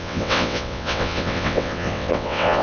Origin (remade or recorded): remade